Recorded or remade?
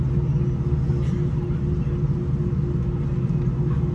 recorded